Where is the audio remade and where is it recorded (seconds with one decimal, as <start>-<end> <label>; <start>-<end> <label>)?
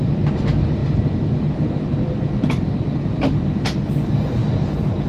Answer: 0.0-5.1 recorded